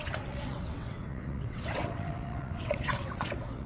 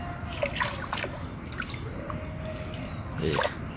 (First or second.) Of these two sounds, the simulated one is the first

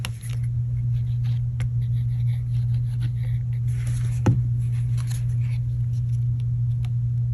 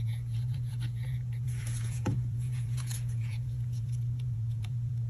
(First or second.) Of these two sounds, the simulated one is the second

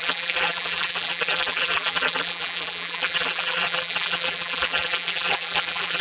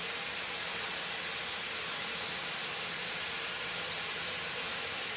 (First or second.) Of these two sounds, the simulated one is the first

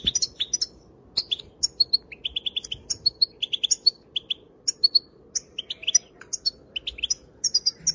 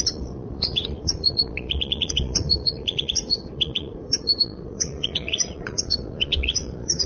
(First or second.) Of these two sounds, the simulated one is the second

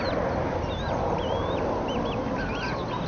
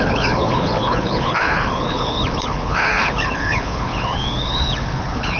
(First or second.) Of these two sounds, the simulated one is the second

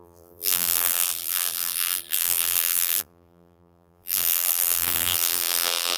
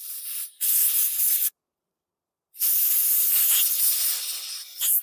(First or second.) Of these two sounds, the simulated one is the first